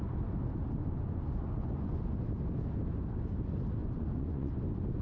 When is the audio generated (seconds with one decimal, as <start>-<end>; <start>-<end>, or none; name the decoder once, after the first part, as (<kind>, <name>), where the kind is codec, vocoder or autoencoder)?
0.8-2.1 (vocoder, Vocos); 3.8-4.5

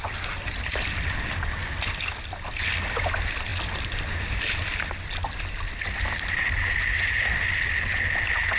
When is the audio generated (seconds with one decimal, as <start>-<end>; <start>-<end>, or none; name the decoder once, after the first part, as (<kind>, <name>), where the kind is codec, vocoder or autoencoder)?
none

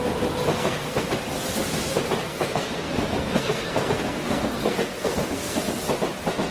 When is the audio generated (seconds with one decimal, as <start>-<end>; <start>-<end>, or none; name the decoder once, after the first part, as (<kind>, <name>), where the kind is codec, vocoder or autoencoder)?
0.5-1.1 (codec, SNAC); 2.2-5.6

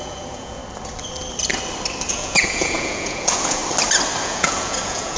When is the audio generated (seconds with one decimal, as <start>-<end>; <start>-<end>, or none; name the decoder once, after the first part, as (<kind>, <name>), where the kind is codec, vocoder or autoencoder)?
0.0-0.6 (vocoder, Vocos); 2.1-3.6; 4.2-5.2

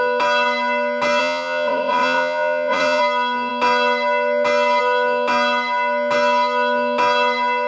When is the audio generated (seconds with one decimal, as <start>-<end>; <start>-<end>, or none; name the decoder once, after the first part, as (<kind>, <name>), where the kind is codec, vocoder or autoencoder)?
1.2-3.0 (vocoder, Vocos)